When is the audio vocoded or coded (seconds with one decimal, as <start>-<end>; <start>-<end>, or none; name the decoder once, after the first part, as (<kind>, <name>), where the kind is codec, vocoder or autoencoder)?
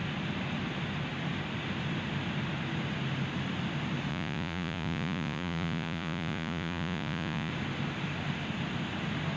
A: 4.1-7.5 (vocoder, Vocos)